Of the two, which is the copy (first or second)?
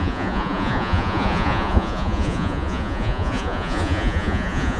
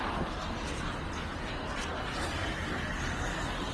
first